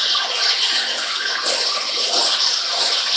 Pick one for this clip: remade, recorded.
recorded